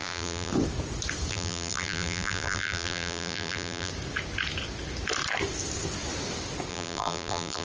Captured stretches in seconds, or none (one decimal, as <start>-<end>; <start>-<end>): 0.5-1.3; 3.9-6.7